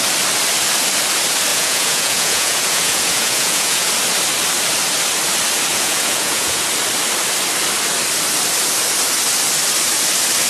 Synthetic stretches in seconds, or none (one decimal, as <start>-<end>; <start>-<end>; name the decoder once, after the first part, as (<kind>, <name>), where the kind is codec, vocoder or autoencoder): 1.5-3.9 (vocoder, Vocos); 5.7-6.6